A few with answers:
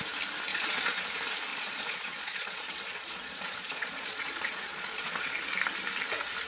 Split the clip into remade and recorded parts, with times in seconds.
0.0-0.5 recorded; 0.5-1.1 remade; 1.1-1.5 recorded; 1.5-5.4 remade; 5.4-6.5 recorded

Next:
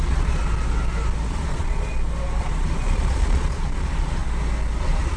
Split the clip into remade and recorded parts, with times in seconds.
0.0-0.4 remade; 0.4-1.3 recorded; 1.3-1.9 remade; 1.9-2.4 recorded; 2.4-4.2 remade; 4.2-4.8 recorded; 4.8-5.2 remade

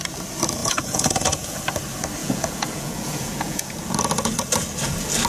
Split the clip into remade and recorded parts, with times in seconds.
0.0-0.6 recorded; 0.6-1.6 remade; 1.6-2.2 recorded; 2.2-3.9 remade; 3.9-5.3 recorded

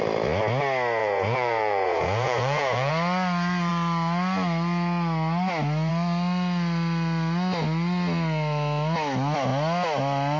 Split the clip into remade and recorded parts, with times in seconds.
0.0-1.0 recorded; 1.0-2.9 remade; 2.9-10.4 recorded